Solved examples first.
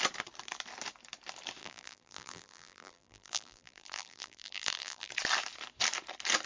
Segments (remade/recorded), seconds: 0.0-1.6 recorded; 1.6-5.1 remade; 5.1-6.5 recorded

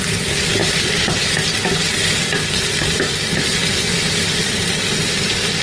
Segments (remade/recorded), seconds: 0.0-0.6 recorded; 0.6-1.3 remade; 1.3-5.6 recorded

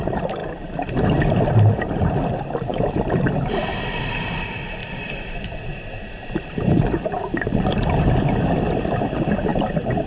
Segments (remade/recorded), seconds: 0.0-4.8 recorded; 4.8-9.0 remade; 9.0-9.5 recorded; 9.5-10.1 remade

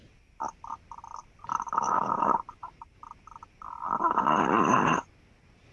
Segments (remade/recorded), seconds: 0.0-1.2 recorded; 1.2-3.0 remade; 3.0-5.7 recorded

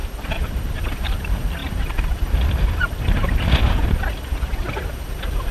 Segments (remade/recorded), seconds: 0.0-0.8 remade; 0.8-1.6 recorded; 1.6-4.9 remade; 4.9-5.5 recorded

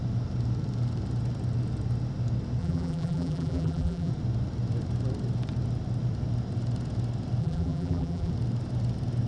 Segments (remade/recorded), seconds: 0.0-2.6 recorded; 2.6-4.1 remade; 4.1-7.4 recorded; 7.4-8.3 remade; 8.3-9.3 recorded

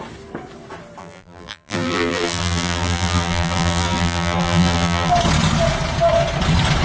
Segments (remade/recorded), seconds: 0.0-1.0 recorded; 1.0-5.1 remade; 5.1-6.8 recorded